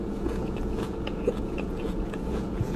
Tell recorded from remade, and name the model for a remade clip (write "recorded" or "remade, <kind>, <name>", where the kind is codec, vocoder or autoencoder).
remade, vocoder, Vocos